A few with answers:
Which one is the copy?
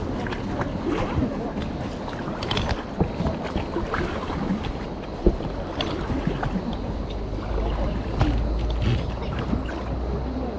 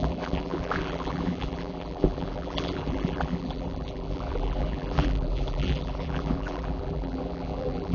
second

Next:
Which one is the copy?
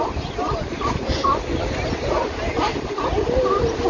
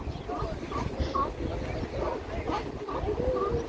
first